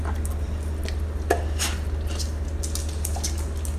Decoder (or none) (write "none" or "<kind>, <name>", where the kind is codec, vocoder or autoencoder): none